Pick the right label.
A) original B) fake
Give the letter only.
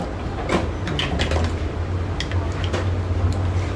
A